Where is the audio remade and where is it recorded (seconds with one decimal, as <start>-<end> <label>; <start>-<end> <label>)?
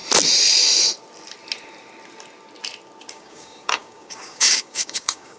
0.0-3.1 recorded; 3.1-5.4 remade